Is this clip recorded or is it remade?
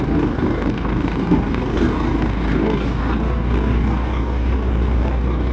remade